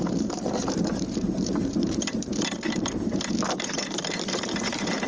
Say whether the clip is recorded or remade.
remade